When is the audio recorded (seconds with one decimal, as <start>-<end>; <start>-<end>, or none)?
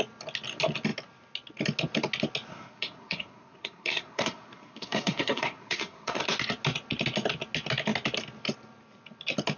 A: 0.0-2.5; 6.2-9.6